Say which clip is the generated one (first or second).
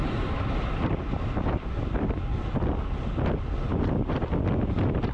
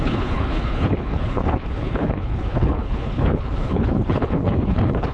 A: second